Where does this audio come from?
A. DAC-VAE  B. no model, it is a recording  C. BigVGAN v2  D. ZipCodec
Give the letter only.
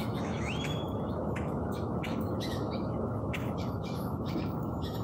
A